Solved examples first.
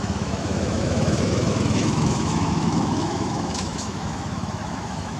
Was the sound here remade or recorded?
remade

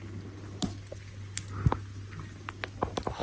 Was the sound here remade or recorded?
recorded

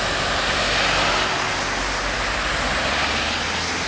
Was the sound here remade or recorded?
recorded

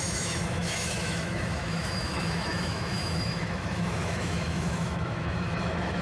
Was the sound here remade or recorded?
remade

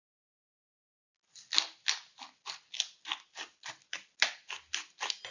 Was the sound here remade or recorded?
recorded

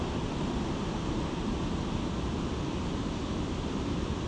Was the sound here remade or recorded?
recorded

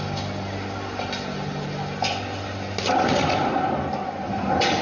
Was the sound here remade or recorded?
recorded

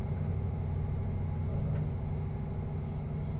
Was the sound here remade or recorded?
recorded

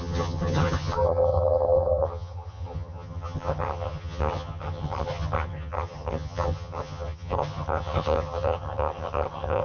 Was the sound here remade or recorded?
remade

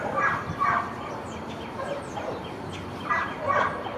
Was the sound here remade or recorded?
recorded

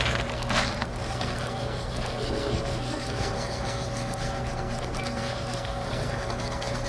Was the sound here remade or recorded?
remade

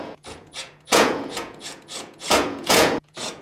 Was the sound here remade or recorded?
remade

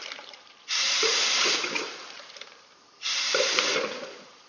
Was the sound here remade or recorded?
remade